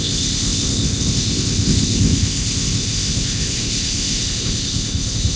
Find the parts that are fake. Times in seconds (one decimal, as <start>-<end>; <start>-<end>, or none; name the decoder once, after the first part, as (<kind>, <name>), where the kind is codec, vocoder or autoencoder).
0.0-5.4 (codec, ZipCodec)